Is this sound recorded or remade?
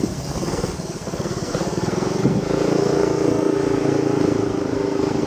remade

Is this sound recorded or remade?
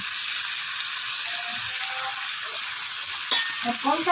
recorded